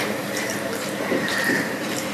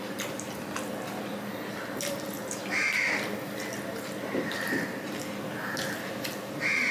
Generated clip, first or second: first